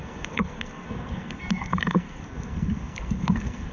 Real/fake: fake